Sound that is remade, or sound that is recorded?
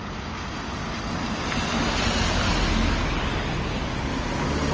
recorded